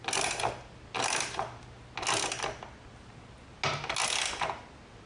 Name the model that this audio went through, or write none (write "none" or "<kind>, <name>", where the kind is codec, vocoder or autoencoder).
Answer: none